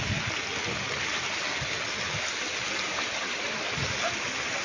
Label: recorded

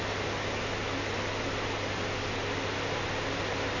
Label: recorded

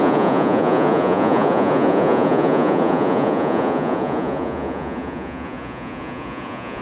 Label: remade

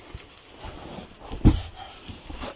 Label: recorded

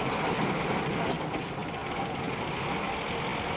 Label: recorded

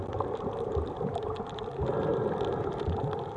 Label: recorded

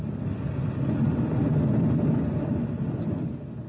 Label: recorded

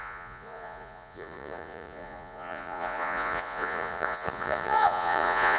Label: remade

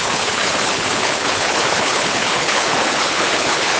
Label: remade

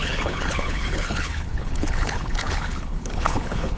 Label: remade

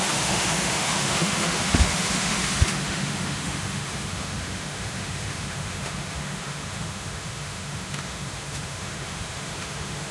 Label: remade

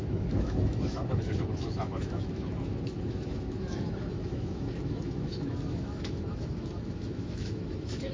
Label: remade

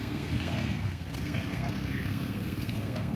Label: remade